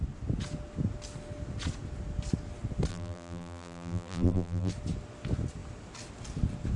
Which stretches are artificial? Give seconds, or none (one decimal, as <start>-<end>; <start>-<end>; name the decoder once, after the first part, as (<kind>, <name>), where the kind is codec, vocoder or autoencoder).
2.9-4.7 (vocoder, BigVGAN v2)